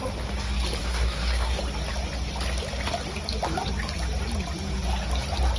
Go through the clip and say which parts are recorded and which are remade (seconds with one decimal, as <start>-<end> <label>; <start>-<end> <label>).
0.0-0.8 recorded; 0.8-1.6 remade; 1.6-5.6 recorded